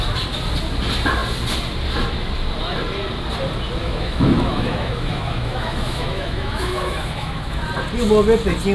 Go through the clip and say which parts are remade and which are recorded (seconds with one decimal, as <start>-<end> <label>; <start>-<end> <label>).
0.0-3.8 recorded; 3.8-7.7 remade; 7.7-8.7 recorded